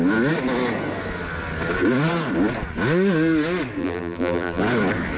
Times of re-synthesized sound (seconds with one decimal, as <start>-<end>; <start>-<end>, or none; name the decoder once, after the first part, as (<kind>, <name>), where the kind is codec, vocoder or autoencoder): 3.8-4.6 (vocoder, BigVGAN v2)